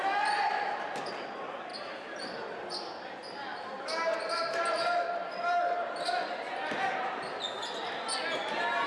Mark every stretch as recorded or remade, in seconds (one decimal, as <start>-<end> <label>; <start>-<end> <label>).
0.0-1.7 recorded; 1.7-2.4 remade; 2.4-8.9 recorded